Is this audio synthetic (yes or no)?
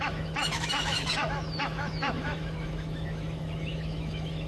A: yes